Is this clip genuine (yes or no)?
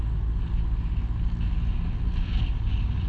yes